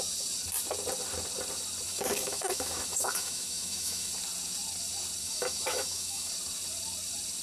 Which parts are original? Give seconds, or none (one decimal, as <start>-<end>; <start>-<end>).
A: 0.0-1.9; 4.1-5.2; 6.3-7.4